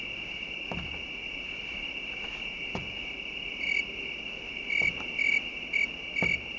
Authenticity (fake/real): real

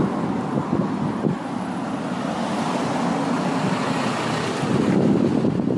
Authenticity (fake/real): real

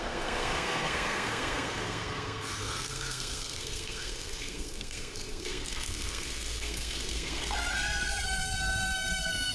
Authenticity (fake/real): fake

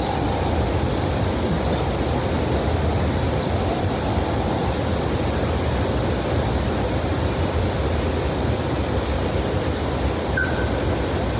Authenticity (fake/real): real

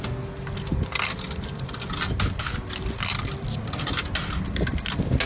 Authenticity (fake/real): real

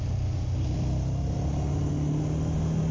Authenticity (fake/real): real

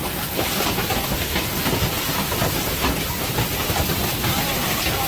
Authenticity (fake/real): real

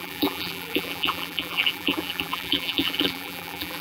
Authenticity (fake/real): fake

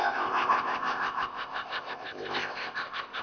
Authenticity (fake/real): fake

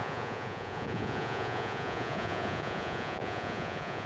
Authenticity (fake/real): fake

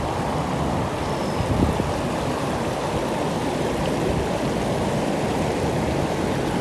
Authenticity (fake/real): real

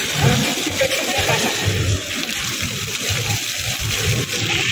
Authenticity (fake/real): real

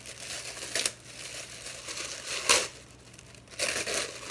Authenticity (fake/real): real